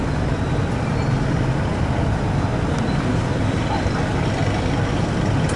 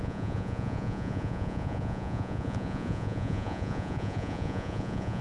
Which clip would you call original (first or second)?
first